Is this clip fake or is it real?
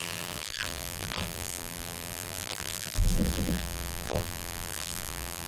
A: fake